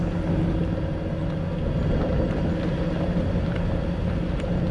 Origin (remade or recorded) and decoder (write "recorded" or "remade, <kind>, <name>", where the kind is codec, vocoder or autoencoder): recorded